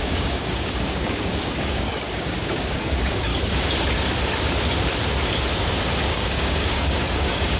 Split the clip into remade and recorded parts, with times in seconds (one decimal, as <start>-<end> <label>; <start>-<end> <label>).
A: 0.0-3.3 remade; 3.3-6.1 recorded; 6.1-7.6 remade